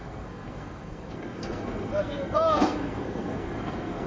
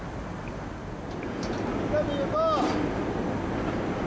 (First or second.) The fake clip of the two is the first